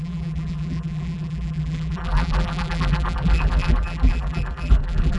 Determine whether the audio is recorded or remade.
remade